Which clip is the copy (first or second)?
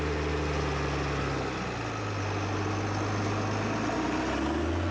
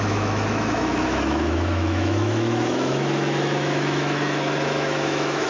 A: second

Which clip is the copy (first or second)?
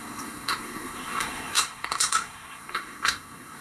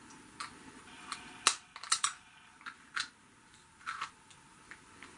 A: first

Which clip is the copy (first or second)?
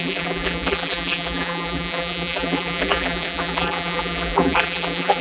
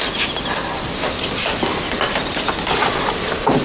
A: first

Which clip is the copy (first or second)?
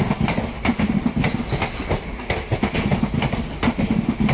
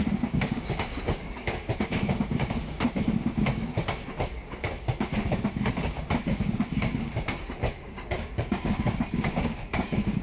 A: second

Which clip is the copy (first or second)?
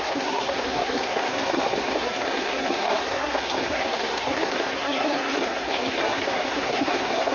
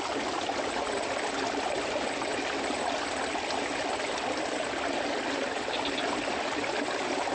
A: first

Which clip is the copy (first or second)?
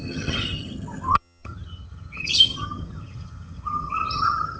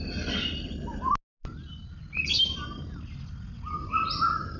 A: first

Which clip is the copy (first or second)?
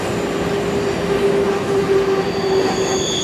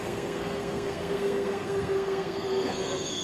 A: second